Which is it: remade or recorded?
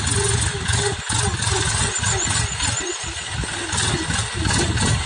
recorded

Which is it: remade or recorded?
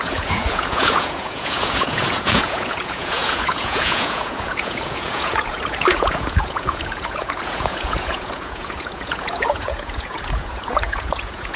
remade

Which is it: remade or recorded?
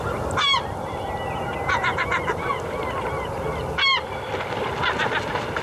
recorded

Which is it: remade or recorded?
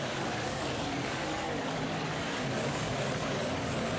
remade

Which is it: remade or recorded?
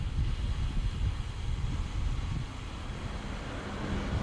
recorded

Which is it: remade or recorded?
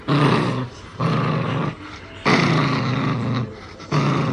remade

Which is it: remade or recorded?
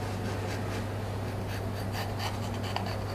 recorded